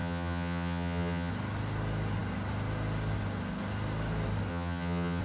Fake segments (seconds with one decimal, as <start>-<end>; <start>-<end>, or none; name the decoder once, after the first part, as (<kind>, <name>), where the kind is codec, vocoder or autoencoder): 0.0-1.3 (vocoder, HiFi-GAN); 4.5-5.2